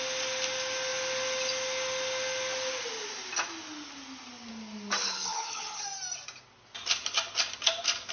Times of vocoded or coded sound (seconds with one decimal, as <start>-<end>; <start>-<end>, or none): 5.0-5.8